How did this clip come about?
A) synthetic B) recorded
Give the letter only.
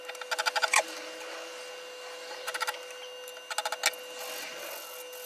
B